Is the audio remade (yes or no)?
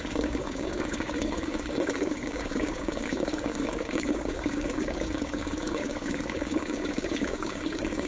yes